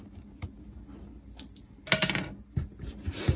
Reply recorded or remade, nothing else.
recorded